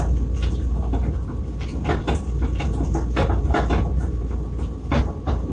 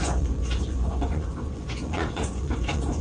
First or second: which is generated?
second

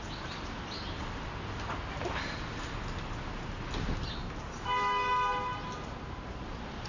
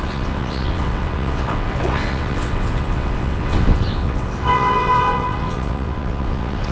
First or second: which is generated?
second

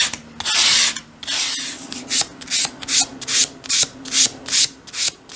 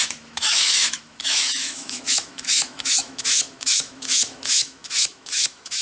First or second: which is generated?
second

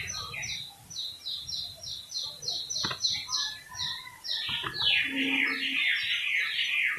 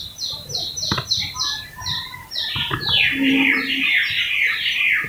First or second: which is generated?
second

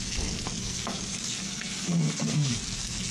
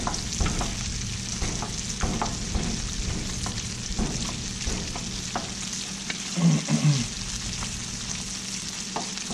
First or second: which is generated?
first